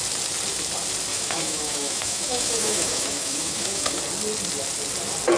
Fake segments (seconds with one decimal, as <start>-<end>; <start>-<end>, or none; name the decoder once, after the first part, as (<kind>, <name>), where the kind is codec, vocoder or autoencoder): 1.1-4.0 (autoencoder, DAC-VAE)